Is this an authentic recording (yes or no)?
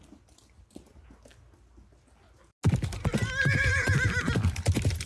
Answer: yes